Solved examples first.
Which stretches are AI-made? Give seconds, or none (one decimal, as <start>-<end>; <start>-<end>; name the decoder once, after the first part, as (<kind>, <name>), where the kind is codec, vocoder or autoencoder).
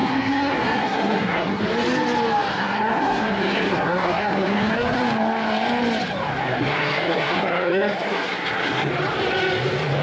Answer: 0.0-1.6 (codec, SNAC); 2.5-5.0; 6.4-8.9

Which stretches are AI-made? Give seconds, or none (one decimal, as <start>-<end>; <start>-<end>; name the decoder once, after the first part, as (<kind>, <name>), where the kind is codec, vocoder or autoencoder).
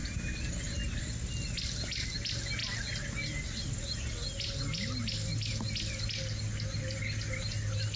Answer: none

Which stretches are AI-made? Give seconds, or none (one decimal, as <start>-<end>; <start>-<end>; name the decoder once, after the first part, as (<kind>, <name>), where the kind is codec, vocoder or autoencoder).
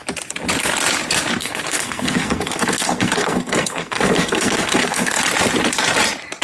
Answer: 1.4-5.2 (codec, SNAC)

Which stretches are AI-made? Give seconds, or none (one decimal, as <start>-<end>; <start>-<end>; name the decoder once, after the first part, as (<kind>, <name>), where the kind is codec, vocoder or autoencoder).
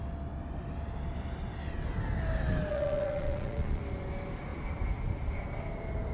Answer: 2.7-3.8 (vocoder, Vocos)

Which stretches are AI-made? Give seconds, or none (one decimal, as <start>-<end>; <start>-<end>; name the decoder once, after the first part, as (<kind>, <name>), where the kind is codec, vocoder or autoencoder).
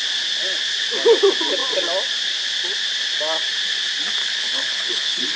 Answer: 4.2-5.4 (codec, HILCodec)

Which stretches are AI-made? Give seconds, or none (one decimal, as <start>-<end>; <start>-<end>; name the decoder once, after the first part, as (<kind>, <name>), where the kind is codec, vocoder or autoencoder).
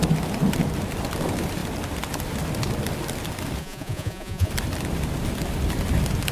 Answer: 3.6-4.5 (vocoder, Vocos)